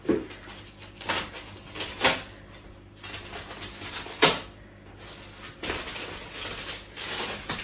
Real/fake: real